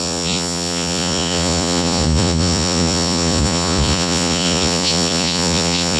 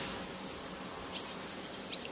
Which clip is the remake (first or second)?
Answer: first